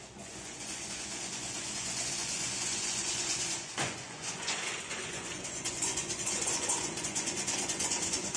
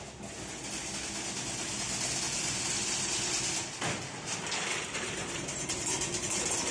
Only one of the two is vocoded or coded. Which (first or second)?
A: first